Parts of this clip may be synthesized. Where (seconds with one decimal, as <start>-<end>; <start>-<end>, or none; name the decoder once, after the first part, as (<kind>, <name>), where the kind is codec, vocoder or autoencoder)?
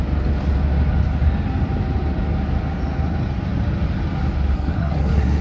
4.5-5.4 (codec, SNAC)